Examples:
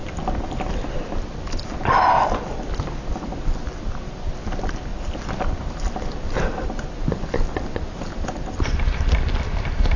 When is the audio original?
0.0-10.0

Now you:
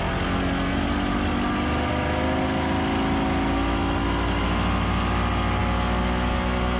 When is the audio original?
0.0-6.8

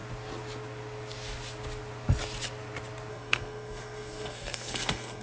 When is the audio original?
0.0-3.1

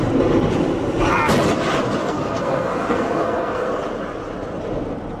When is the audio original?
0.0-2.0; 3.7-5.2

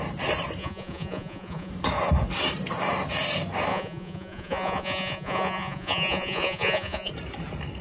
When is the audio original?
0.0-0.6; 1.7-3.7; 7.1-7.8

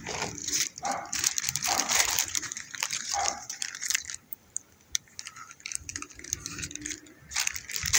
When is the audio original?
0.0-0.4; 5.2-5.9; 6.7-8.0

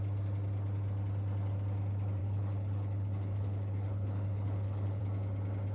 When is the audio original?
0.0-2.2; 5.0-5.7